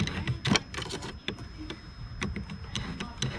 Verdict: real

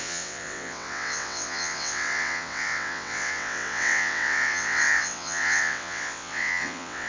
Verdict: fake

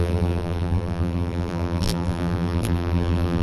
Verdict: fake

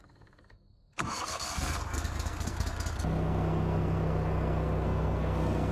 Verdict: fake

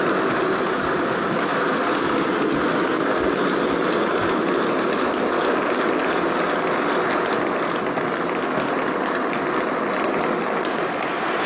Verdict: real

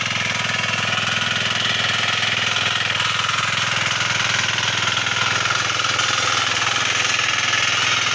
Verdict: real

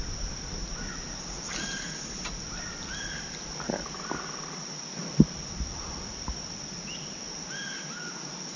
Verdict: real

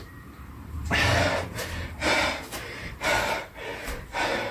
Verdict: fake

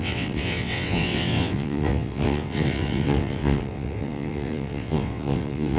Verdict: fake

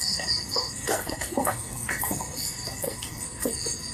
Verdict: fake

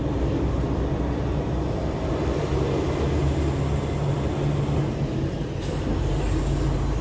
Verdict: real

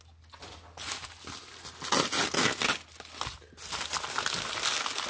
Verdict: real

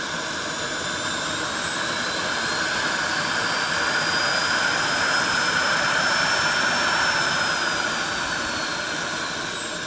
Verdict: real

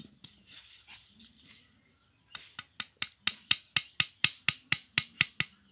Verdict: real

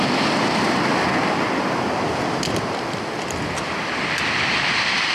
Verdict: real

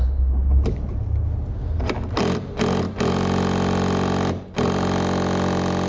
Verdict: real